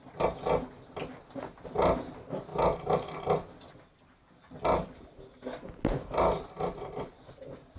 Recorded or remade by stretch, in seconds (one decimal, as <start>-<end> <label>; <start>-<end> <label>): 0.0-7.8 recorded